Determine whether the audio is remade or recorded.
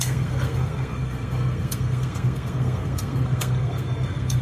remade